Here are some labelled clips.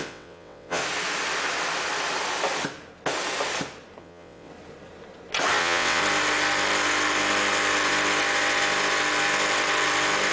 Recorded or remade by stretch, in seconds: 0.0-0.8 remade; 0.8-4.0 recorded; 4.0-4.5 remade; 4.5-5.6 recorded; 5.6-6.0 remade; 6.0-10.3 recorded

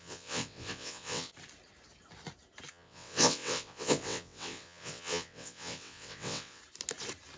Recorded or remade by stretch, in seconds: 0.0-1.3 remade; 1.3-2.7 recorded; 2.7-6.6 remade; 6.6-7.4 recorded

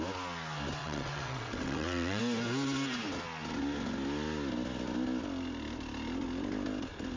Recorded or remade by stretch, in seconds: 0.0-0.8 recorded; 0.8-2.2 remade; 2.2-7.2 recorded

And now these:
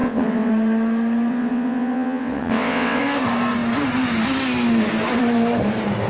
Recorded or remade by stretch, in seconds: 0.0-0.5 remade; 0.5-1.3 recorded; 1.3-3.0 remade; 3.0-6.1 recorded

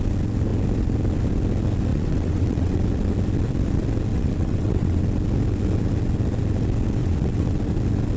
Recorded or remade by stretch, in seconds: 0.0-1.9 recorded; 1.9-2.8 remade; 2.8-4.1 recorded; 4.1-5.0 remade; 5.0-7.0 recorded; 7.0-7.6 remade; 7.6-8.2 recorded

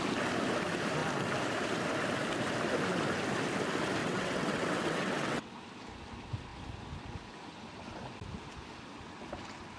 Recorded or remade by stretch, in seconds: 0.0-4.0 recorded; 4.0-5.5 remade; 5.5-9.8 recorded

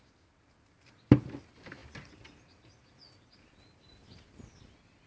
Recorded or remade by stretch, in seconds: 0.0-5.1 recorded

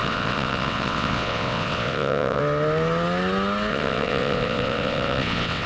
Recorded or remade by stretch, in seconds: 0.0-2.4 remade; 2.4-3.7 recorded; 3.7-5.7 remade